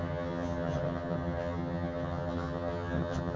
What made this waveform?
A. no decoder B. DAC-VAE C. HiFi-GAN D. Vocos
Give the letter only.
C